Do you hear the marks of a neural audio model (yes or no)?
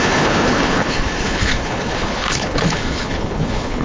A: yes